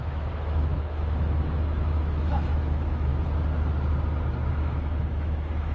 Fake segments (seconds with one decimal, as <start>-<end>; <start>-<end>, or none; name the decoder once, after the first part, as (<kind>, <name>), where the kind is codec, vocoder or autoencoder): 0.0-3.1 (autoencoder, DAC-VAE); 4.5-5.7